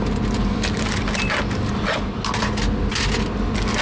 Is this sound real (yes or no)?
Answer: yes